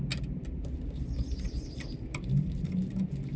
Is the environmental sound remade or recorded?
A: recorded